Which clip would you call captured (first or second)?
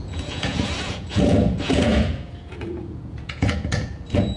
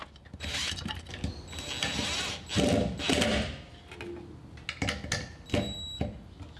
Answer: second